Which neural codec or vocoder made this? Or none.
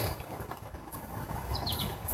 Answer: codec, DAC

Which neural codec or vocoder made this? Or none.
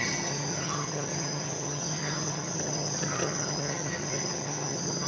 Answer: vocoder, HiFi-GAN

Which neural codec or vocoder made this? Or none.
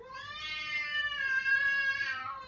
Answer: vocoder, BigVGAN v2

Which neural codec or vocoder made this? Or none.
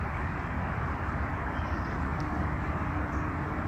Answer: codec, DAC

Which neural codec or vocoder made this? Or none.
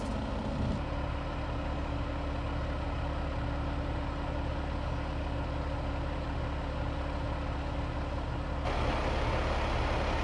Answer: none